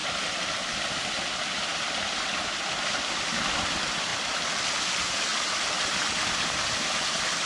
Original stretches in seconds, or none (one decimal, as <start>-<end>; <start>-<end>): 4.1-4.8; 5.3-6.1